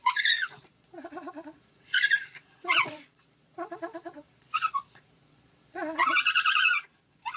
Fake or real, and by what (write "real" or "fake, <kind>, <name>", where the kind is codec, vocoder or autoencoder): fake, vocoder, Vocos